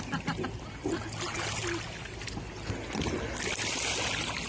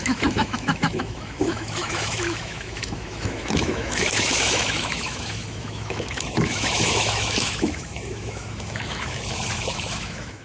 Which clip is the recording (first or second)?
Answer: first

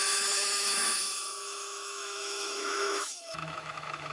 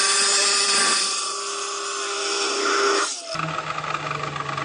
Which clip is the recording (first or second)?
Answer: second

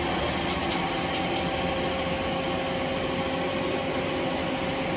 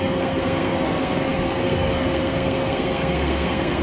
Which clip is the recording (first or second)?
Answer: first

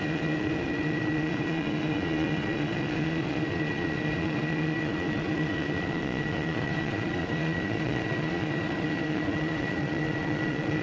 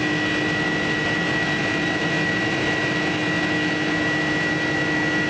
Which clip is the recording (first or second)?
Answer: second